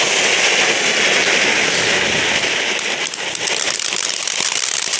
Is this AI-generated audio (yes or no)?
no